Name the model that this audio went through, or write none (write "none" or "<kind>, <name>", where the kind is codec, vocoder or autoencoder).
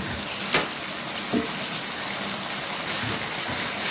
none